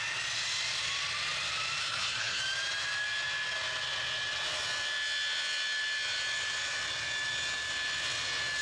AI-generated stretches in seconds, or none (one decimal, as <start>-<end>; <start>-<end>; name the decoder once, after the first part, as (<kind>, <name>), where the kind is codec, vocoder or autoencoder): 1.8-2.4 (codec, SNAC)